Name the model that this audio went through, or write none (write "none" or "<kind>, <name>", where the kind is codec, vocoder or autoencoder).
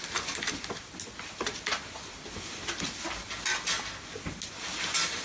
none